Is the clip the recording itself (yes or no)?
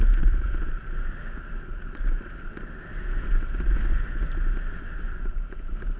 yes